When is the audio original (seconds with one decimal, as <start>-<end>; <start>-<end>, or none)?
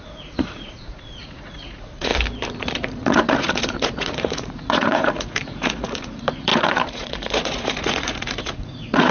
2.1-2.6